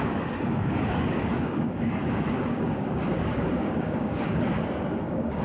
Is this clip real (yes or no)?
no